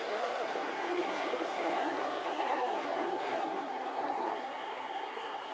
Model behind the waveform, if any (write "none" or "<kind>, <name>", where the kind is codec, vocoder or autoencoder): codec, SNAC